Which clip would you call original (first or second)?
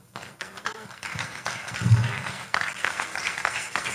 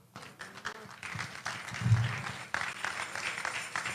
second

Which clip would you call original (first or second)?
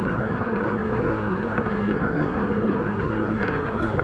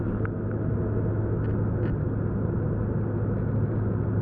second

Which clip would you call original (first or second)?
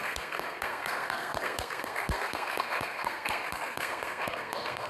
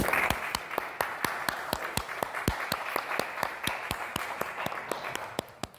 second